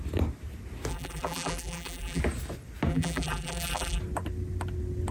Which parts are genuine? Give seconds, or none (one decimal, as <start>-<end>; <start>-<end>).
0.0-0.9; 2.2-2.9; 4.0-5.1